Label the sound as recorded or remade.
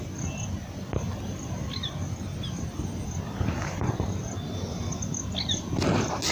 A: recorded